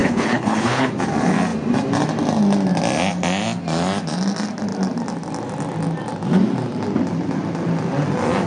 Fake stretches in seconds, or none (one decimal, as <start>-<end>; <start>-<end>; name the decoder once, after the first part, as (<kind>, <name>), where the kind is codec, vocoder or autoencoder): 0.0-0.9 (codec, HILCodec)